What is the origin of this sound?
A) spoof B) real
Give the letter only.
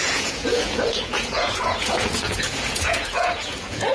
A